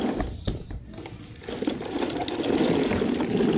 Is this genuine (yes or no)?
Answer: yes